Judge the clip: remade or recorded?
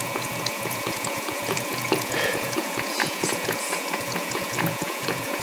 remade